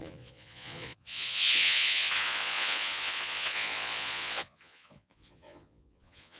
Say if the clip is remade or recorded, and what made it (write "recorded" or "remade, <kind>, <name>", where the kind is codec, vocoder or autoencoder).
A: remade, vocoder, Vocos